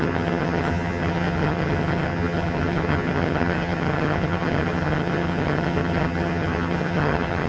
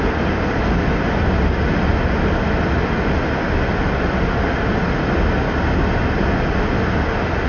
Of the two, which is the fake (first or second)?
first